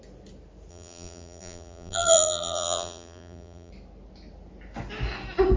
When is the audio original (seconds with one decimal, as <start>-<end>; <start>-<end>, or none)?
0.0-0.7; 3.7-5.6